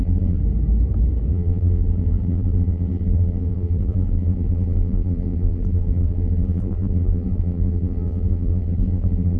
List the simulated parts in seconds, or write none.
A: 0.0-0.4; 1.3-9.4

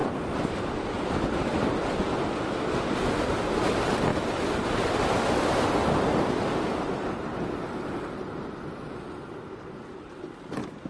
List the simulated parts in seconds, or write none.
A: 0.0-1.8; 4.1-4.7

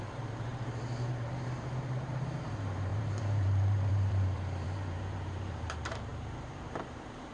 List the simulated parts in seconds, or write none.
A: 0.0-7.3

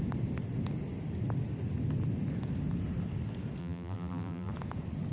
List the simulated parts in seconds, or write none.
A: 3.6-4.5

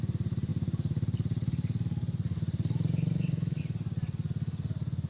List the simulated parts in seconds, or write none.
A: 0.5-3.6

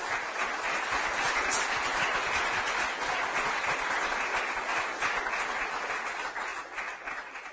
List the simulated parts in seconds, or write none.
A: none